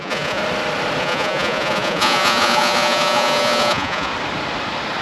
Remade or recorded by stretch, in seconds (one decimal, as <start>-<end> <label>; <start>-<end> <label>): 0.0-0.4 remade; 0.4-1.0 recorded; 1.0-4.1 remade; 4.1-5.0 recorded